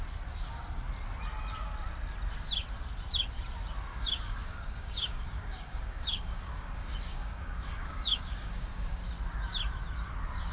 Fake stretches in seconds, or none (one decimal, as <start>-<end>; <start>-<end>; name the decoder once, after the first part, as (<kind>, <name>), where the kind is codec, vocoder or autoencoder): 3.9-9.0 (codec, DAC)